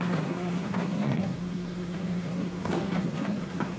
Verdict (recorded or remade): remade